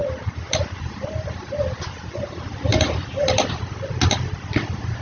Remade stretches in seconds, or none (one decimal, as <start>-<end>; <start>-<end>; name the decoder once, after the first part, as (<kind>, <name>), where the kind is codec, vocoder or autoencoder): none